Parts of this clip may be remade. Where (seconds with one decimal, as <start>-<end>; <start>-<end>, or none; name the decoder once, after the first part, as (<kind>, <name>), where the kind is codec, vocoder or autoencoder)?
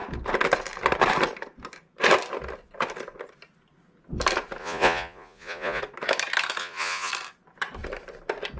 4.6-5.8 (vocoder, Vocos); 6.6-7.1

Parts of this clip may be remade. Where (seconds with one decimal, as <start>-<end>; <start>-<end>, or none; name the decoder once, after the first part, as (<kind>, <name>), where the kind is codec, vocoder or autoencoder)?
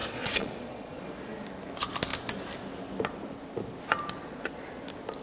0.0-1.0 (vocoder, Vocos); 4.2-4.8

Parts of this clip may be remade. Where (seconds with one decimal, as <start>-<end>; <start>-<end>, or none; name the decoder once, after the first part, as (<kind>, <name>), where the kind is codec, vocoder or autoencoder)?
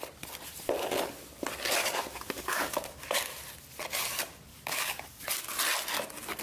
1.8-3.2 (codec, DAC); 4.5-5.2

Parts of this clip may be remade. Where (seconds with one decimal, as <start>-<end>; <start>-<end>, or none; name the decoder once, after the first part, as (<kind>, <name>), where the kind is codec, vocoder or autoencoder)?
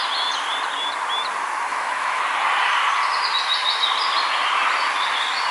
1.7-2.2 (autoencoder, DAC-VAE)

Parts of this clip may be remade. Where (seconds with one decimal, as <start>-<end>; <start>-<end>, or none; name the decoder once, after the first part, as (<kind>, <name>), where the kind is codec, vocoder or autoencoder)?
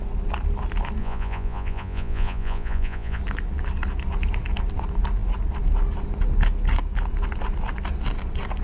1.0-3.2 (vocoder, Vocos)